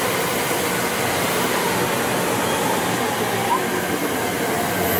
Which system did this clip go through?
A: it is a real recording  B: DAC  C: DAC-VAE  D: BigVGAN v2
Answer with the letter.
A